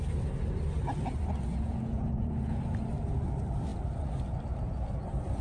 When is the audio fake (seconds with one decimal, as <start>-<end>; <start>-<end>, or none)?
1.5-2.6